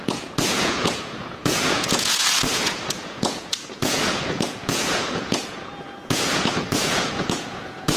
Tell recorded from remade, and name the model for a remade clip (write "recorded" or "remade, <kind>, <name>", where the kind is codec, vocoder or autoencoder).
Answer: remade, vocoder, Vocos